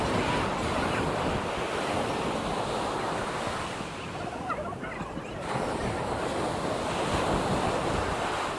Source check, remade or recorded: recorded